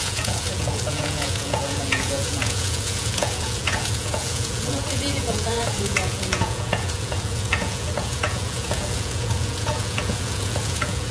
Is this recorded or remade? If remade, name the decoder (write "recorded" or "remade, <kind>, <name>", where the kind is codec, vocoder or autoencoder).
remade, vocoder, Vocos